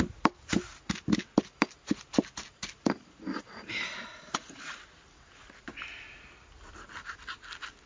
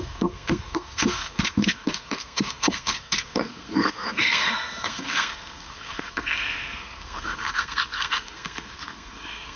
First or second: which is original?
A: first